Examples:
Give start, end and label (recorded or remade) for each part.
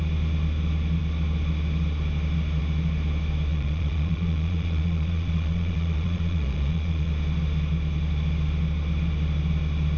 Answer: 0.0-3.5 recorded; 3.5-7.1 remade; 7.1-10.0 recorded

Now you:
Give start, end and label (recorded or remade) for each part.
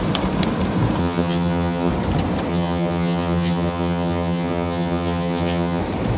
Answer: 0.0-1.0 recorded; 1.0-1.9 remade; 1.9-2.5 recorded; 2.5-5.8 remade; 5.8-6.2 recorded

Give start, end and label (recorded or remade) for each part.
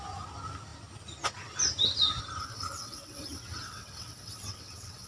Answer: 0.0-2.4 recorded; 2.4-5.1 remade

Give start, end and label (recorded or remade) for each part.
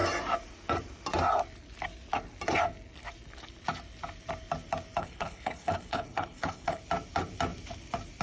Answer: 0.0-5.0 recorded; 5.0-6.8 remade; 6.8-8.2 recorded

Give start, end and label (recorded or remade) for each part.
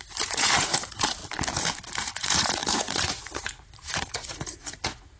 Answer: 0.0-1.2 remade; 1.2-1.9 recorded; 1.9-5.2 remade